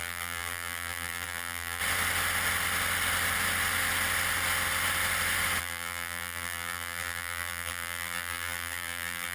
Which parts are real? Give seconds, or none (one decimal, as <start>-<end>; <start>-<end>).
1.8-5.6